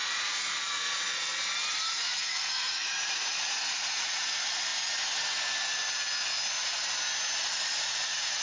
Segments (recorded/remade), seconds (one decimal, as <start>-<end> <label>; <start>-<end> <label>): 0.0-1.3 remade; 1.3-1.9 recorded; 1.9-4.7 remade; 4.7-7.5 recorded; 7.5-8.4 remade